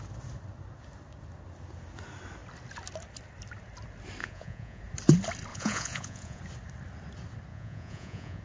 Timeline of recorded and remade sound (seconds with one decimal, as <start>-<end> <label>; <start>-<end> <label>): 0.0-4.2 recorded; 4.2-4.8 remade; 4.8-5.5 recorded; 5.5-6.4 remade; 6.4-7.5 recorded; 7.5-8.4 remade